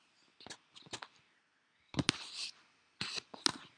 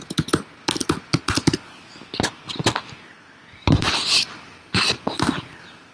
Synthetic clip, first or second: second